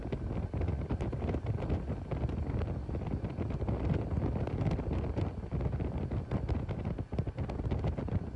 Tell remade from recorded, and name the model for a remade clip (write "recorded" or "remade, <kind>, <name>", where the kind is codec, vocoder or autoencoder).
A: recorded